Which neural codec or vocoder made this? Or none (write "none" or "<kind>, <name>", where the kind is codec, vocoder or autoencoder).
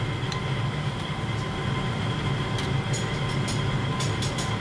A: none